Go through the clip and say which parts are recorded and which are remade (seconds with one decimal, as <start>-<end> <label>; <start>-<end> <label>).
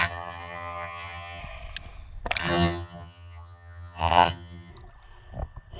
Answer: 0.0-1.4 remade; 1.4-2.4 recorded; 2.4-4.7 remade; 4.7-5.8 recorded